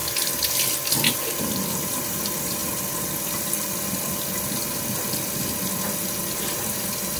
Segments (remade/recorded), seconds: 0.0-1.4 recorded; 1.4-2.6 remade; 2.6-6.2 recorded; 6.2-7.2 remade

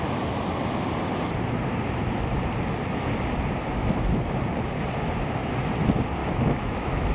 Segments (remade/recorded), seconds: 0.0-6.2 recorded; 6.2-7.1 remade

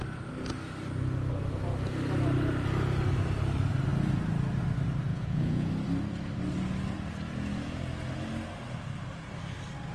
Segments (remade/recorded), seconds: 0.0-5.1 recorded; 5.1-5.7 remade; 5.7-9.9 recorded

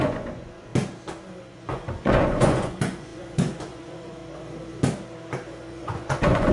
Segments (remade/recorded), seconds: 0.0-0.7 remade; 0.7-1.4 recorded; 1.4-4.2 remade; 4.2-5.7 recorded; 5.7-6.5 remade

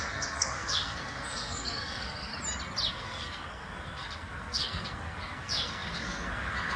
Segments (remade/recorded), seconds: 0.0-2.3 remade; 2.3-2.9 recorded; 2.9-6.8 remade

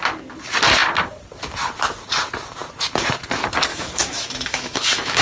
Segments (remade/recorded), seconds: 0.0-3.7 recorded; 3.7-5.2 remade